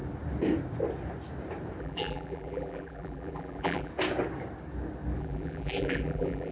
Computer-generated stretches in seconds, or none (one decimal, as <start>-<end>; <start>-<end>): 1.8-3.9; 5.2-6.5